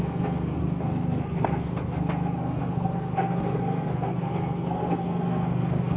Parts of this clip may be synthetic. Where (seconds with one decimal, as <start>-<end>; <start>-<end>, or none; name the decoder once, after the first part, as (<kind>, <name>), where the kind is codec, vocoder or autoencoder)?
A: 0.0-6.0 (codec, SNAC)